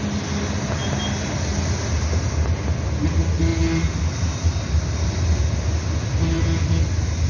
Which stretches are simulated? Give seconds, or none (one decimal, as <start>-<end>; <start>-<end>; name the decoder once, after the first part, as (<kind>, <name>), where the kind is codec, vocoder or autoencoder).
none